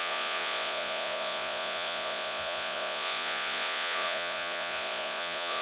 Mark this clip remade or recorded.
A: remade